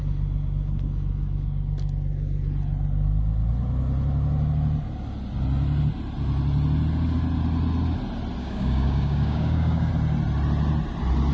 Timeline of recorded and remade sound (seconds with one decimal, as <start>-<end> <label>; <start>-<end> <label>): 0.0-8.4 recorded; 8.4-9.9 remade; 9.9-11.3 recorded